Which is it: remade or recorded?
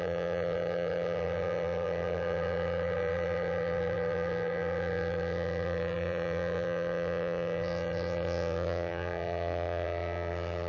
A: remade